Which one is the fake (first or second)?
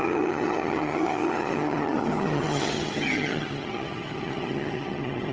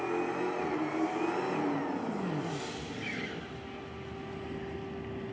first